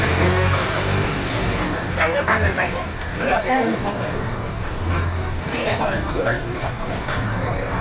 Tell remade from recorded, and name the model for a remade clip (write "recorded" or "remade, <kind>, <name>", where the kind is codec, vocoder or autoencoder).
remade, codec, DAC